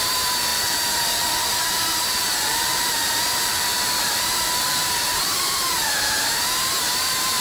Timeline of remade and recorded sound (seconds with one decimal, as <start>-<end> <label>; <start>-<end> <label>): 0.0-7.4 remade